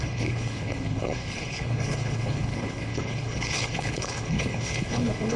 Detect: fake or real fake